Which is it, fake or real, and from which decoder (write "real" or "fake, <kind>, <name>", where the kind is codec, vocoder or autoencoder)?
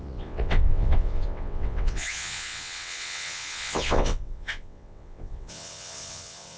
fake, vocoder, WaveNeXt